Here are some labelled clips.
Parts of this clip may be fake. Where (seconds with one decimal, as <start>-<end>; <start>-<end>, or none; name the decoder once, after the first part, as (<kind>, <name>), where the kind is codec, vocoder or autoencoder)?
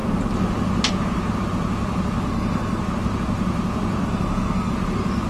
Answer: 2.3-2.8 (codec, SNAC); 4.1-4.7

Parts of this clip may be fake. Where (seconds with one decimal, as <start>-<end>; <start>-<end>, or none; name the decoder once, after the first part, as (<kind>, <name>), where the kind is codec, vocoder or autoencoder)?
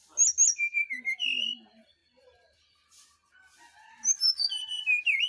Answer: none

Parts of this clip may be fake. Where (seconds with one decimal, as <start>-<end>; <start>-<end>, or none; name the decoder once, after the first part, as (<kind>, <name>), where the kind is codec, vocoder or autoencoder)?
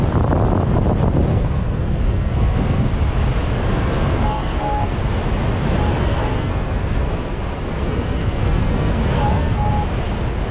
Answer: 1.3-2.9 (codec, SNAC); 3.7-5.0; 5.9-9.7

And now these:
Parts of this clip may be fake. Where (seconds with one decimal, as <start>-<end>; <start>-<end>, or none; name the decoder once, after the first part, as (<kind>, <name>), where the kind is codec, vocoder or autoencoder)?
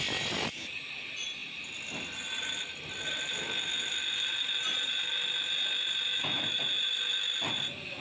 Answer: none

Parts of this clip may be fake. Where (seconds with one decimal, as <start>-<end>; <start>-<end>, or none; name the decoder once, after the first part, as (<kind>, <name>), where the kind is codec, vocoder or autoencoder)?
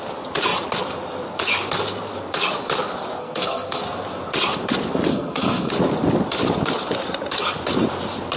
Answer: 3.2-3.8 (codec, SNAC); 5.1-5.7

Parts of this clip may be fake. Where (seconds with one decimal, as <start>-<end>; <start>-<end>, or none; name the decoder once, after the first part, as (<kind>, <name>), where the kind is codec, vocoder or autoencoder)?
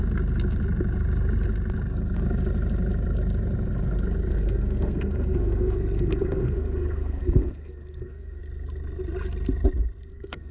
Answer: 4.3-8.4 (codec, SNAC); 10.1-10.5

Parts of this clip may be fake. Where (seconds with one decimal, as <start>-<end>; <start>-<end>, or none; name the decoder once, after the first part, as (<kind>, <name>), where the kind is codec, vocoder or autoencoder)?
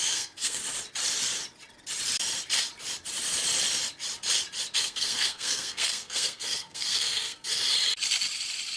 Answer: 0.0-0.6 (codec, SNAC); 4.8-7.5